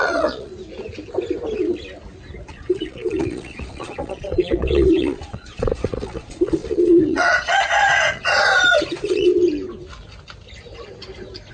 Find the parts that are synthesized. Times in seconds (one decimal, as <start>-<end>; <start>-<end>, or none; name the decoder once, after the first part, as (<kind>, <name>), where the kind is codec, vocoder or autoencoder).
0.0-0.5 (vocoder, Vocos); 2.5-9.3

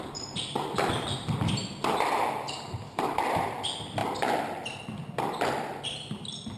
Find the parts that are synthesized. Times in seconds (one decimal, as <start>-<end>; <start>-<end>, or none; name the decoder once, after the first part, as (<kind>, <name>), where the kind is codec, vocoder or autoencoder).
0.0-1.6 (vocoder, BigVGAN v2); 2.7-4.0; 5.8-6.6

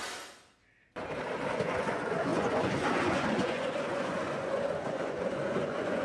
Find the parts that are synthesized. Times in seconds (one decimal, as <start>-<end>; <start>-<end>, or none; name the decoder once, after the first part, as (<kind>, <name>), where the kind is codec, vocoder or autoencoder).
1.5-6.0 (vocoder, Vocos)

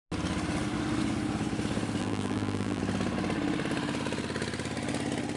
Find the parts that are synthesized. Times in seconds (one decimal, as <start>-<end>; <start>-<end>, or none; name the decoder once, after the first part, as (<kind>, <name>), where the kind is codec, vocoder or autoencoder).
2.0-2.8 (vocoder, BigVGAN v2)

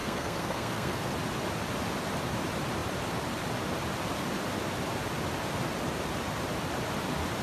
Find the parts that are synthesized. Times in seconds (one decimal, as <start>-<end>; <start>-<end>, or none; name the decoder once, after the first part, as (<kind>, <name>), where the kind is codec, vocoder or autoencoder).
0.0-1.1 (codec, SNAC)

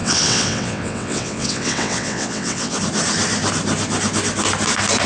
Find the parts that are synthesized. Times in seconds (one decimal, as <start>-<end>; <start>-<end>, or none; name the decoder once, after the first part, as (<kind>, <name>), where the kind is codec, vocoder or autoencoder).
0.0-2.8 (vocoder, WaveNeXt)

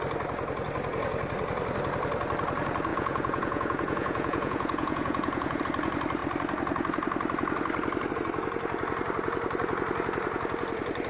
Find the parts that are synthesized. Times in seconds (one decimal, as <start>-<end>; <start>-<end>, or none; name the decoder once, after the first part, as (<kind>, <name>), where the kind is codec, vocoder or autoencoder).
2.9-5.6 (vocoder, Vocos)